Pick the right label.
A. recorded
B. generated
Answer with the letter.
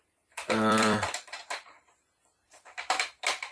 B